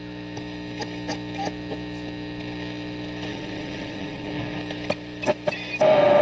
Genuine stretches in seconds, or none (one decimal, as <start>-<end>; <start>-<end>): 0.0-3.3; 4.3-6.2